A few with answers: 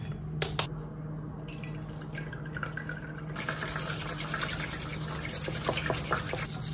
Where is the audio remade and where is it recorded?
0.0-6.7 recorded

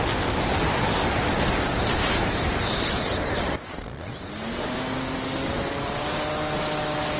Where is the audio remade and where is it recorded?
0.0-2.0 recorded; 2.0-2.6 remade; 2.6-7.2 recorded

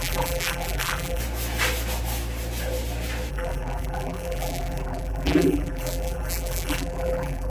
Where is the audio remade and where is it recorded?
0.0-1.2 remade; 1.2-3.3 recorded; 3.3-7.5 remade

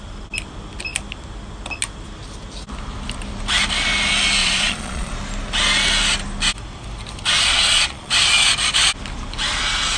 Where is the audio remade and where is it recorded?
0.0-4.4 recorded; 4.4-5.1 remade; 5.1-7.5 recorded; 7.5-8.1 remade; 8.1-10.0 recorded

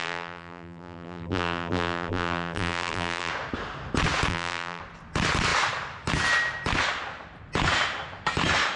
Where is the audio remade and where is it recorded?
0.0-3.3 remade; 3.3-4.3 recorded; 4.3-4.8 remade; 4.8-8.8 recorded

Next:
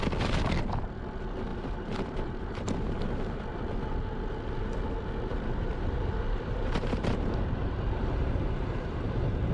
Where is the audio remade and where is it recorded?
0.0-1.5 recorded; 1.5-3.4 remade; 3.4-5.3 recorded; 5.3-9.5 remade